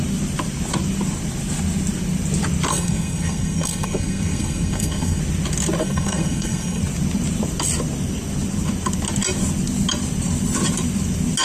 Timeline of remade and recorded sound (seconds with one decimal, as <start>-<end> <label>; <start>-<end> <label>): 0.0-2.7 recorded; 2.7-5.2 remade; 5.2-5.8 recorded; 5.8-6.8 remade; 6.8-11.4 recorded